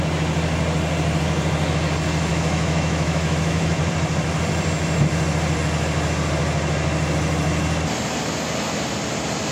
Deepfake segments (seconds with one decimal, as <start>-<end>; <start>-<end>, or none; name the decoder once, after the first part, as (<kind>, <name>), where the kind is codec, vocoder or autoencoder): 2.3-3.8 (autoencoder, DAC-VAE)